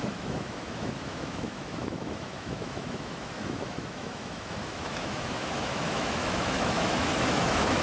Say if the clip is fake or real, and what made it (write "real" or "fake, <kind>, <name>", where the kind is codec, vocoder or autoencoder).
fake, autoencoder, DAC-VAE